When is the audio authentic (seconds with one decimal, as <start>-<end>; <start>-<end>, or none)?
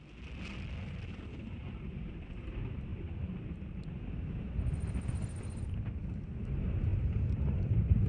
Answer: 0.0-6.9